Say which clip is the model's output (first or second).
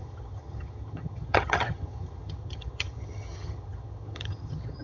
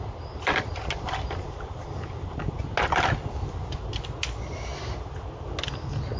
first